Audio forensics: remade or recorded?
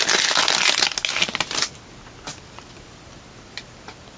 recorded